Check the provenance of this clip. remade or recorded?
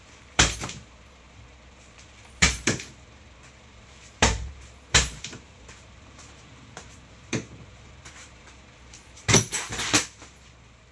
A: remade